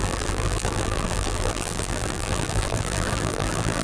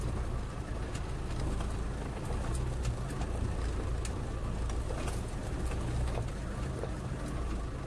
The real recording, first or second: second